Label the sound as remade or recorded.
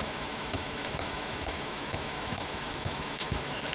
remade